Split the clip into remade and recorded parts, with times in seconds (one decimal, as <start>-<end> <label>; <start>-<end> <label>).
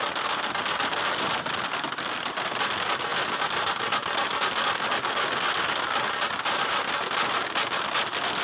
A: 0.0-8.4 recorded